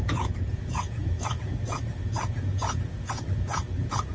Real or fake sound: fake